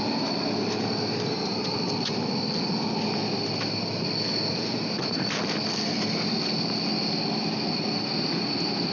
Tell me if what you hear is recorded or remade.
recorded